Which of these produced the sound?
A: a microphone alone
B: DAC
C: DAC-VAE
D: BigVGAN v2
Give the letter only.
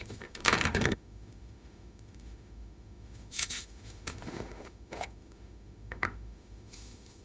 C